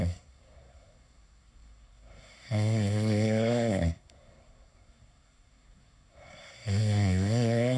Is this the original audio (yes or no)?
no